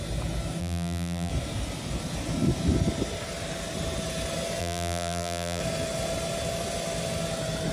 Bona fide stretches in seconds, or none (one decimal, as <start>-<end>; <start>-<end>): 0.0-0.6; 1.3-4.6; 5.6-7.7

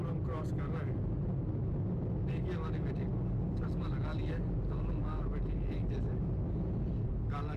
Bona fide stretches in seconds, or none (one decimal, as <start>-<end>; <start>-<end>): 0.0-7.6

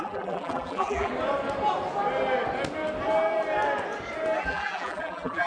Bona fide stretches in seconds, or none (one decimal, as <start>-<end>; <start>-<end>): 1.1-4.4

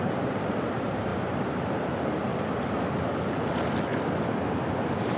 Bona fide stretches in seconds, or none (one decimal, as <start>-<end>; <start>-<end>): 2.3-3.3; 3.9-4.6

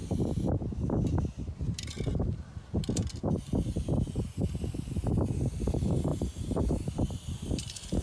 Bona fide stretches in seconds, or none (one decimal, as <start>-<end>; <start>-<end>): 0.0-1.6; 2.5-5.4